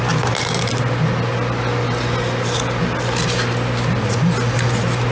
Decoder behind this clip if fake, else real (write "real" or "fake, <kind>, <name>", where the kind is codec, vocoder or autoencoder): real